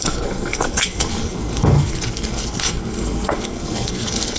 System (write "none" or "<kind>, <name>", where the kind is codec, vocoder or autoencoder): codec, SNAC